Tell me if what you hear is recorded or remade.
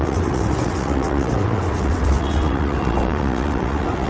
remade